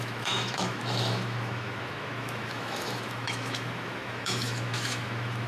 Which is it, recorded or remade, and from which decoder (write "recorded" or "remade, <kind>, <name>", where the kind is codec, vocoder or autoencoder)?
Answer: remade, autoencoder, DAC-VAE